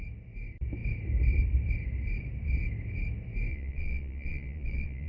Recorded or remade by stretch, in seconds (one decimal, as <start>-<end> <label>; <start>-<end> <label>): 0.0-3.5 recorded; 3.5-5.1 remade